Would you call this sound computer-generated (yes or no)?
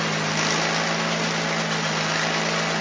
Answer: no